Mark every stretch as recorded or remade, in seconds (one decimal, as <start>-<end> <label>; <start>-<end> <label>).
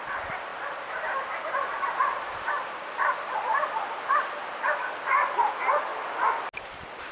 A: 0.0-7.1 recorded